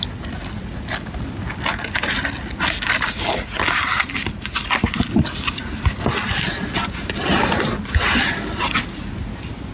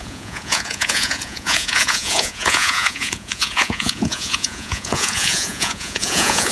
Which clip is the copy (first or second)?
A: second